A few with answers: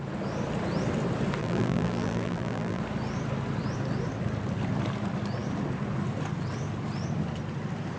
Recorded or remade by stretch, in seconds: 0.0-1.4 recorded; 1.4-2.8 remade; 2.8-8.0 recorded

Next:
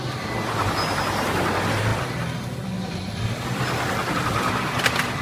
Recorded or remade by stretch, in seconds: 0.0-5.2 recorded